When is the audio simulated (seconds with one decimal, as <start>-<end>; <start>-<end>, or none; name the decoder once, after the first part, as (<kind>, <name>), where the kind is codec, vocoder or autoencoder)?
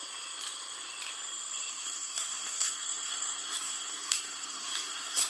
1.7-5.3 (codec, SNAC)